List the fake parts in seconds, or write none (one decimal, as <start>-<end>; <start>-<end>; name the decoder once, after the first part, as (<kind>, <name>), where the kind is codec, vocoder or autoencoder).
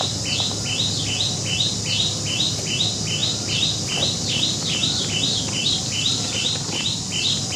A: none